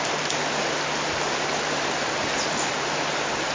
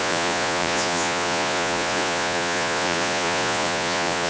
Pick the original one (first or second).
first